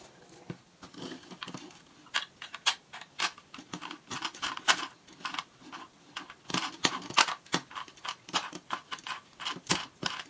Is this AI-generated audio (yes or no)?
no